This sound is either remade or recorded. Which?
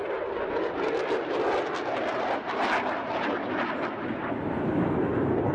recorded